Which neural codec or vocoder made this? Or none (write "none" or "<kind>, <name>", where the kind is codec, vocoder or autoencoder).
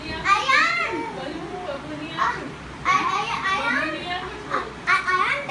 none